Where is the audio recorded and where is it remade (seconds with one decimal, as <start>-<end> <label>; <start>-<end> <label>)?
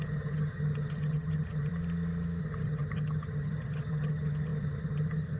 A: 0.0-1.7 remade; 1.7-2.4 recorded; 2.4-5.4 remade